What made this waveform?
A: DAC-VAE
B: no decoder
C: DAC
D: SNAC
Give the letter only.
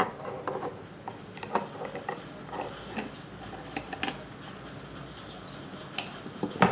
B